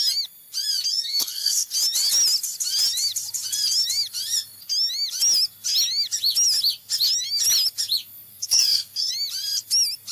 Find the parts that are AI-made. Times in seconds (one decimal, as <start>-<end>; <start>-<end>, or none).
0.9-1.7; 8.3-9.1